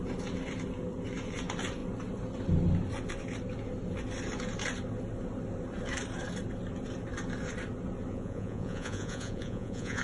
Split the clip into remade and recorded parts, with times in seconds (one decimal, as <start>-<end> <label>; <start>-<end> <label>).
0.0-8.1 recorded; 8.1-10.0 remade